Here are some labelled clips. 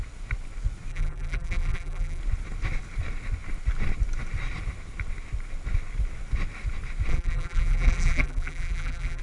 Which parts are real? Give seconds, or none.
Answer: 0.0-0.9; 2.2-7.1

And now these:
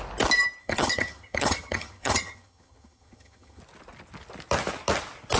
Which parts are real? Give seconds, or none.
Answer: 0.0-0.6; 3.6-5.4

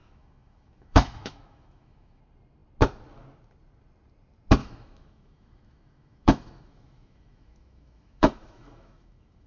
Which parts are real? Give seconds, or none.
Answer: 2.2-4.6

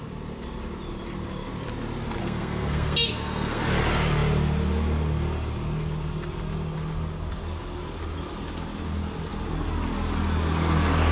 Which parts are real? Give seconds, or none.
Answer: 0.0-2.2; 3.6-11.1

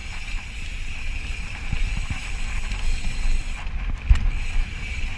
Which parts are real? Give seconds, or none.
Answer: 0.0-5.2